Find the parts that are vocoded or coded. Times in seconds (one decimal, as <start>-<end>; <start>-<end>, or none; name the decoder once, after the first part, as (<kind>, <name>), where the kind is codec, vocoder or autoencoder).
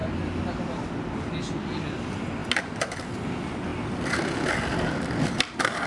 none